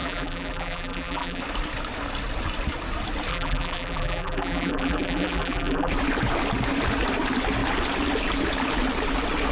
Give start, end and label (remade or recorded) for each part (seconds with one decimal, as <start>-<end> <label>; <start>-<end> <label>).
0.0-1.4 remade; 1.4-3.3 recorded; 3.3-5.9 remade; 5.9-9.5 recorded